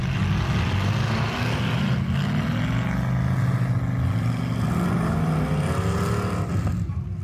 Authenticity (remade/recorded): recorded